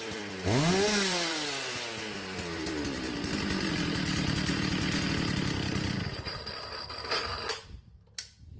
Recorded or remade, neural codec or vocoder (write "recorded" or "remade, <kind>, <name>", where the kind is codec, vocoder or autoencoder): remade, vocoder, BigVGAN v2